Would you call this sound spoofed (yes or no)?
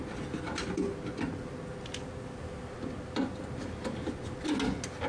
no